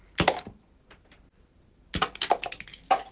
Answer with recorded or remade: recorded